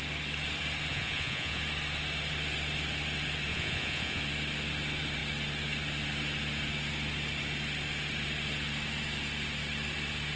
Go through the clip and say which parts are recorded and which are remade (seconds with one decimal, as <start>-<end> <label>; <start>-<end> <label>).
0.0-0.9 recorded; 0.9-1.6 remade; 1.6-3.5 recorded; 3.5-4.2 remade; 4.2-10.4 recorded